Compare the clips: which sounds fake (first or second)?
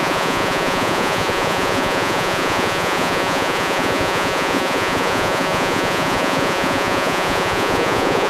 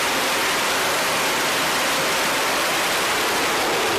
first